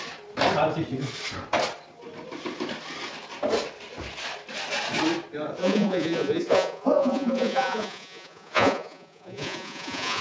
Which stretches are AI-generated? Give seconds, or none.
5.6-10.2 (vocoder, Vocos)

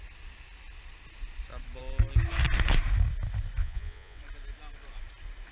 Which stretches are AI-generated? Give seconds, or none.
3.6-4.2 (vocoder, Vocos)

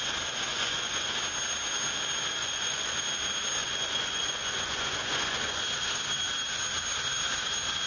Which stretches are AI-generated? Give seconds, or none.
0.5-1.1 (vocoder, Vocos); 2.4-3.0; 3.6-5.6

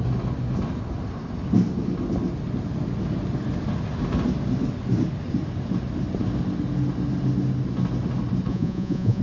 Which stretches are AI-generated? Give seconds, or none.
8.5-9.2 (vocoder, Vocos)

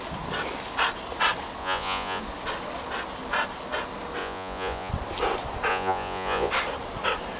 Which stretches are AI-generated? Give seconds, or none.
1.6-2.2 (vocoder, Vocos); 4.2-4.9; 5.7-6.5

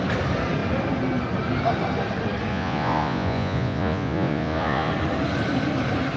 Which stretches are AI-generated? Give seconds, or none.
2.5-4.9 (vocoder, Vocos)

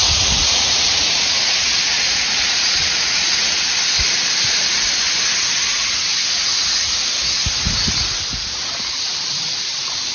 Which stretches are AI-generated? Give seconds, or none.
0.0-3.8 (vocoder, Vocos)

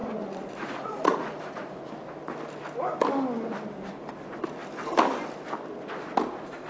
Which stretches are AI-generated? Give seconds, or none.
0.0-1.9 (vocoder, Vocos)